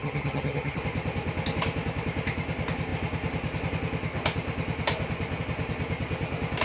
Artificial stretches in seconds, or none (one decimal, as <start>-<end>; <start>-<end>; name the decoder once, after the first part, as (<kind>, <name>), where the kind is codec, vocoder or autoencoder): 0.0-0.8 (vocoder, HiFi-GAN)